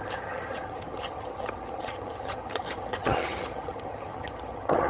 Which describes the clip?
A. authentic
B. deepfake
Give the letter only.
B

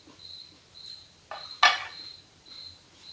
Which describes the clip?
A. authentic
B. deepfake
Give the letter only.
A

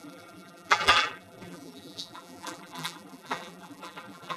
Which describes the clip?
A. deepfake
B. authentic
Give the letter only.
A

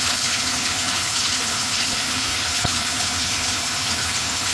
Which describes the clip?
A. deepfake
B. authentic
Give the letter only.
A